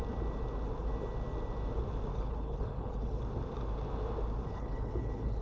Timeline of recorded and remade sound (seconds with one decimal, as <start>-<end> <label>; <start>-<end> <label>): 0.0-2.1 recorded; 2.1-3.2 remade; 3.2-4.5 recorded; 4.5-5.4 remade